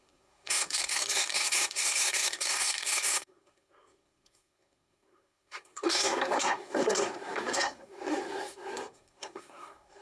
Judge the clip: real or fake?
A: fake